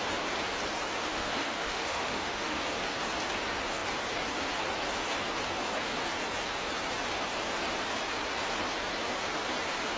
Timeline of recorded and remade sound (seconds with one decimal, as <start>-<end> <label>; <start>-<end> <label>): 0.0-1.0 recorded; 1.0-2.6 remade; 2.6-10.0 recorded